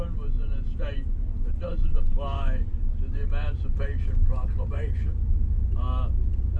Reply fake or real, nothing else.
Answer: real